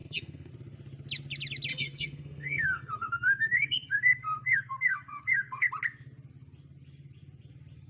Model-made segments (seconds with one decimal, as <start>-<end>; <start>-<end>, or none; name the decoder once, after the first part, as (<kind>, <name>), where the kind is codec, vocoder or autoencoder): 0.0-0.5 (codec, SNAC); 1.7-5.7

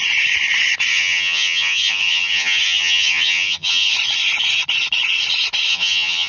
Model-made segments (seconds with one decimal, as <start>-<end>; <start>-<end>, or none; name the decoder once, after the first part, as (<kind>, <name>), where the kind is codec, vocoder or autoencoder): 0.9-3.9 (vocoder, HiFi-GAN); 5.7-6.3

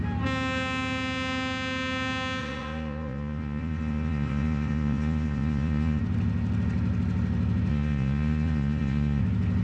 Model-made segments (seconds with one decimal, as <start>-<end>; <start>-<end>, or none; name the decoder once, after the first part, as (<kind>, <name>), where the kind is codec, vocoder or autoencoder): 2.4-6.0 (vocoder, Vocos); 7.7-9.2

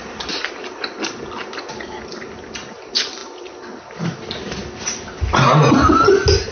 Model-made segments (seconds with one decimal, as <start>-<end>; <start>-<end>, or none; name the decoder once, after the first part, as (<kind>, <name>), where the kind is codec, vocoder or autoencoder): none

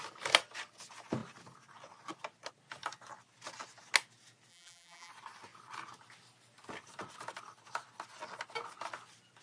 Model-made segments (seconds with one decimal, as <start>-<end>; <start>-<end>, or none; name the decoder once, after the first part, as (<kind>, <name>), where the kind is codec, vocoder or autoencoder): 4.5-5.1 (vocoder, BigVGAN v2)

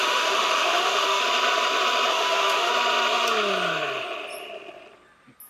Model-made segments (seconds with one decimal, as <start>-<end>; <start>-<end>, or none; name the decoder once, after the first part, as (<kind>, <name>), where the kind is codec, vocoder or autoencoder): 0.0-1.2 (autoencoder, DAC-VAE); 2.1-2.7